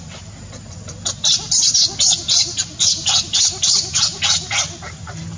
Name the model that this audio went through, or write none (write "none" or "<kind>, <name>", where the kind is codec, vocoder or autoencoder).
none